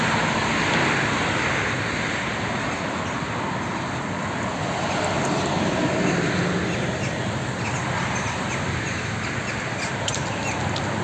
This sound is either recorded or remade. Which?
recorded